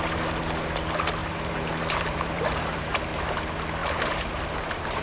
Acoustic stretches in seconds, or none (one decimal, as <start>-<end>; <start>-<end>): 0.0-1.2; 3.4-3.8